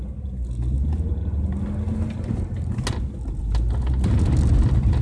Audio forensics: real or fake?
real